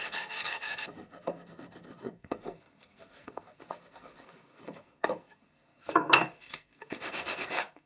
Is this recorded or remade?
remade